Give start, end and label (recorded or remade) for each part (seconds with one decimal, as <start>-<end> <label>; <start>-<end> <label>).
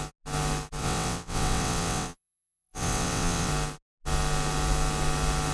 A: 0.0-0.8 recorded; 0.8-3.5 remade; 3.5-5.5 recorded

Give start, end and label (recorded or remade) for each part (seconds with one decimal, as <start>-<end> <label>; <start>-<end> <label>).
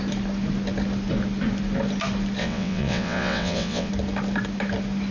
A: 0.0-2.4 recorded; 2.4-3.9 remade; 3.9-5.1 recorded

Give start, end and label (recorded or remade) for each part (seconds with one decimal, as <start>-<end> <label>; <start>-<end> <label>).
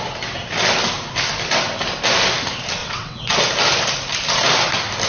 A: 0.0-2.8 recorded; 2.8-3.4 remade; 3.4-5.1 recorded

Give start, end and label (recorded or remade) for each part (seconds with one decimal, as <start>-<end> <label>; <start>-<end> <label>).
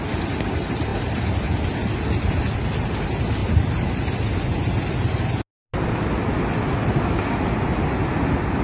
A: 0.0-8.6 recorded